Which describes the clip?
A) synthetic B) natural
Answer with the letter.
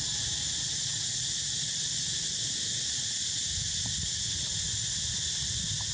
B